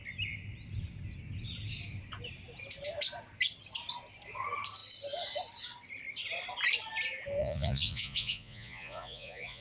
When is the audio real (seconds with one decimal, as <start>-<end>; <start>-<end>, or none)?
0.0-7.4